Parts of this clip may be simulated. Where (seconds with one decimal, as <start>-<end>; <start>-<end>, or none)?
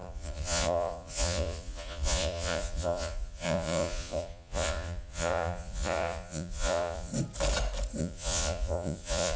0.0-7.1; 8.0-9.4